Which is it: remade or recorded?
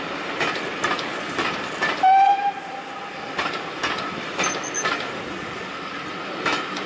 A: recorded